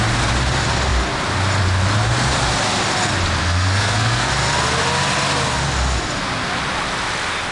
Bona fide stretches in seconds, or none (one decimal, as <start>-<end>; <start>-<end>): 0.0-3.4; 4.3-7.5